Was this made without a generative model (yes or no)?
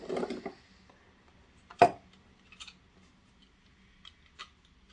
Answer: yes